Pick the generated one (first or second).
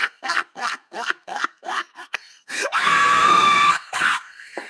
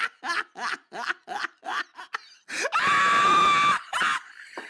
first